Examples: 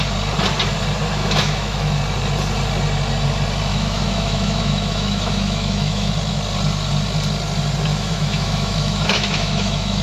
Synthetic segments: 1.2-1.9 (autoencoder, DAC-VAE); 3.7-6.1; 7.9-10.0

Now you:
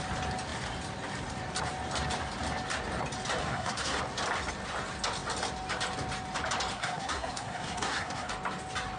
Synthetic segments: 3.4-4.0 (codec, SNAC); 6.7-8.3

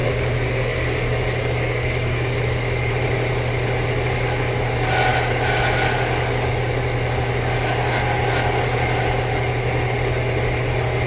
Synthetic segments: 0.0-2.9 (codec, DAC)

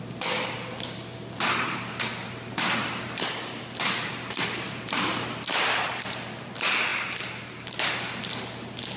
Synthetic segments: none

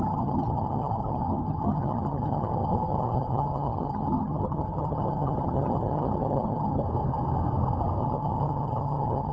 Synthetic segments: 0.0-6.8 (vocoder, HiFi-GAN); 8.0-9.3

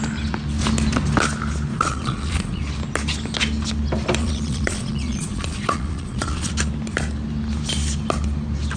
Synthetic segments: 1.7-2.6 (vocoder, Vocos); 4.2-6.5

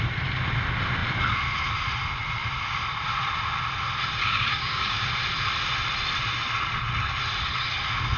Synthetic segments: 4.2-5.1 (codec, DAC)